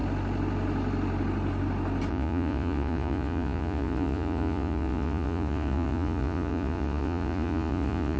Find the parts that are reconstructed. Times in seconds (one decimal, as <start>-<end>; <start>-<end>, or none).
2.1-8.2